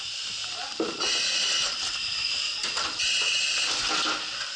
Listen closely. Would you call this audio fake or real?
real